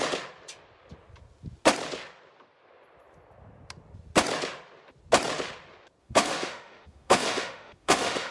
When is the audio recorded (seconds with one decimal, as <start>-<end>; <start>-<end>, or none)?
0.0-6.0